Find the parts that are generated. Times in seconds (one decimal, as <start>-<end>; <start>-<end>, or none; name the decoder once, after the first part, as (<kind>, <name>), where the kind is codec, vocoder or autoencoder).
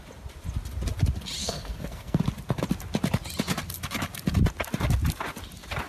1.4-2.2 (codec, SNAC)